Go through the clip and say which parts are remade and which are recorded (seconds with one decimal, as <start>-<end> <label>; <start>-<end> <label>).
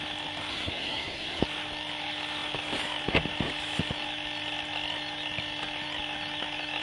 0.0-0.5 recorded; 0.5-1.4 remade; 1.4-6.8 recorded